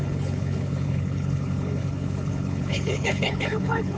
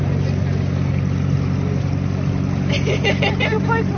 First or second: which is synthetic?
first